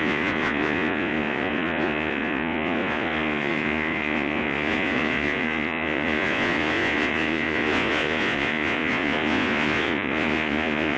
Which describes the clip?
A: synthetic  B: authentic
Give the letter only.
A